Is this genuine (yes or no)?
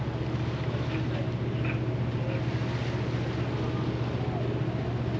yes